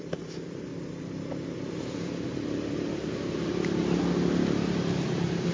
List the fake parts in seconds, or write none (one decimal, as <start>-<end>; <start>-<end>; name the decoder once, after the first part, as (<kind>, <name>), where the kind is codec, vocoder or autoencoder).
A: none